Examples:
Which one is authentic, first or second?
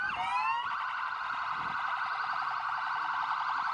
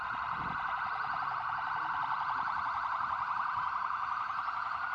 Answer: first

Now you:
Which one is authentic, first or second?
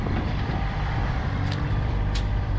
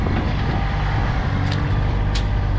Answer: second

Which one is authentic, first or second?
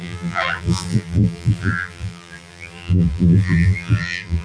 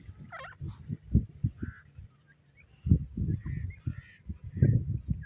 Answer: second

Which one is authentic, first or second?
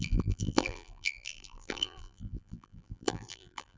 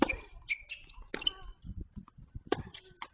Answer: second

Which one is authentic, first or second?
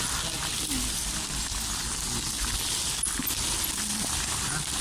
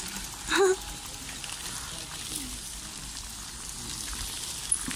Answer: first